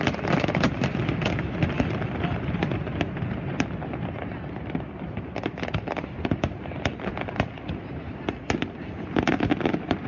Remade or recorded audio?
recorded